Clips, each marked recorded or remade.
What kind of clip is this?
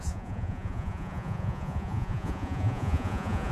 remade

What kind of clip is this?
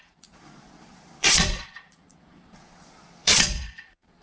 remade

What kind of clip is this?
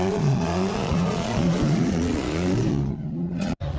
remade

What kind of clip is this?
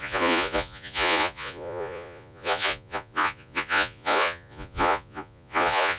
remade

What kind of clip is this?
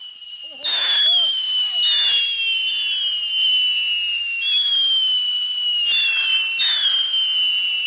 recorded